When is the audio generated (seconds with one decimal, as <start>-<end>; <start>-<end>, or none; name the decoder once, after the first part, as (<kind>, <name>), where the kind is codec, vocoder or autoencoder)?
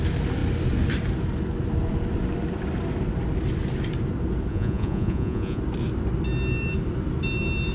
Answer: 4.5-5.6 (vocoder, Vocos)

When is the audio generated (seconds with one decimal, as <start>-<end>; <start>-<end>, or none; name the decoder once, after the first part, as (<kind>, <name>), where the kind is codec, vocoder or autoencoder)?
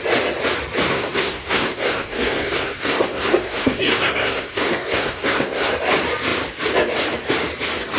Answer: 0.9-5.7 (codec, SNAC)